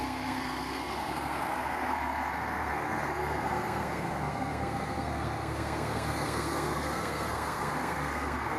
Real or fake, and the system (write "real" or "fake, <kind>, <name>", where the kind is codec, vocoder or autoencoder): fake, codec, SNAC